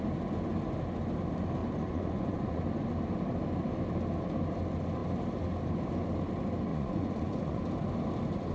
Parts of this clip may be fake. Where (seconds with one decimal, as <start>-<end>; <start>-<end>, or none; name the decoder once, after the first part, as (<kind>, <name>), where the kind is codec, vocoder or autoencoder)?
1.6-2.6 (vocoder, Vocos); 6.7-7.6